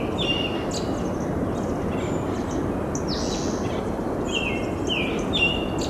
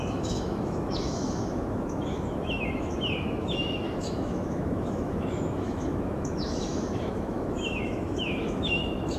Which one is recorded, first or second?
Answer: first